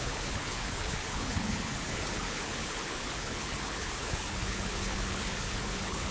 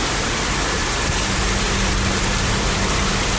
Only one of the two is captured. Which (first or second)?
second